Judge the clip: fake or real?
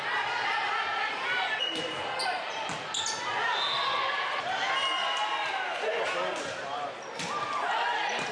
real